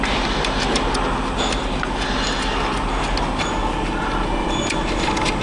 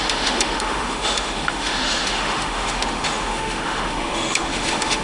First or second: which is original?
first